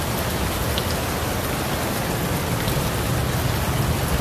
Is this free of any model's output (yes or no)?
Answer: yes